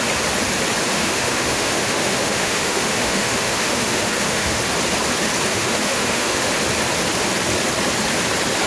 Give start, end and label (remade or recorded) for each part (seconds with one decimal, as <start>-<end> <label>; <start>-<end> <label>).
0.0-0.9 recorded; 0.9-4.6 remade; 4.6-5.5 recorded; 5.5-6.5 remade; 6.5-8.7 recorded